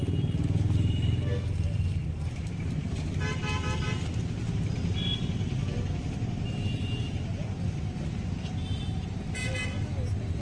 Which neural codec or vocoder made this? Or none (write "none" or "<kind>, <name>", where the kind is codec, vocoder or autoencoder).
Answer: none